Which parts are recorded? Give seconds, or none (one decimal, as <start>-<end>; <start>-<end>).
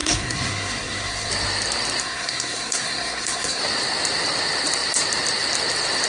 1.3-2.0; 3.6-6.1